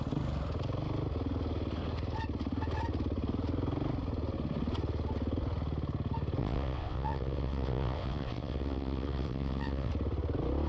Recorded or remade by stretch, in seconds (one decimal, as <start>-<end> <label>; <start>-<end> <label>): 0.0-6.4 recorded; 6.4-9.9 remade; 9.9-10.7 recorded